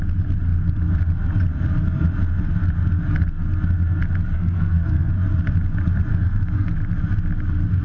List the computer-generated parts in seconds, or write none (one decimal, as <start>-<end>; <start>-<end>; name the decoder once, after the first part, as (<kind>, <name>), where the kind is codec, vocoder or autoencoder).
4.3-5.1 (codec, SNAC); 6.1-6.7